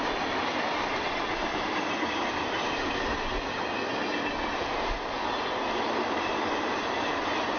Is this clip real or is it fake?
real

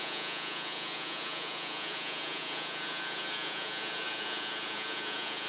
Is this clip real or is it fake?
fake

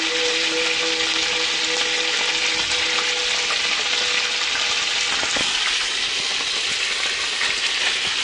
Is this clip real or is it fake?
real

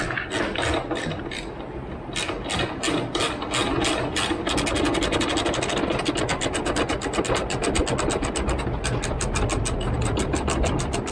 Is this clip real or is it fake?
real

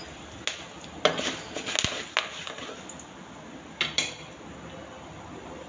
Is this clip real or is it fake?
real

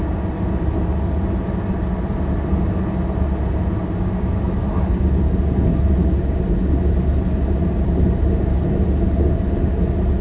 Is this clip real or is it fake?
real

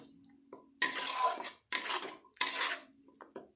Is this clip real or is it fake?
real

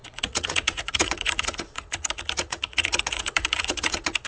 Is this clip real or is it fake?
fake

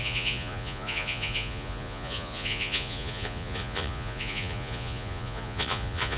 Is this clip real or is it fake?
fake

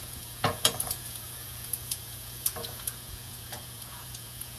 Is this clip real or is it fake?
fake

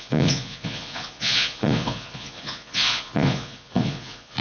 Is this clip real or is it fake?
fake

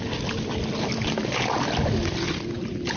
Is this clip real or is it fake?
real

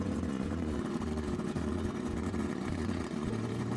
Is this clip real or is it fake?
fake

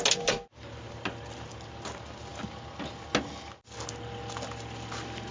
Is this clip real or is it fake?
real